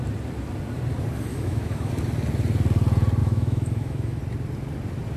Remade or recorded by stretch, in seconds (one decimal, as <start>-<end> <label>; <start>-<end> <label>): 0.0-1.3 recorded; 1.3-1.9 remade; 1.9-3.2 recorded; 3.2-4.2 remade; 4.2-5.2 recorded